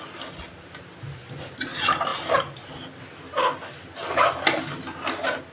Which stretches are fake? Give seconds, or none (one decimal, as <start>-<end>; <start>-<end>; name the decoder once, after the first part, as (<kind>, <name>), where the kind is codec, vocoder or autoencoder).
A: none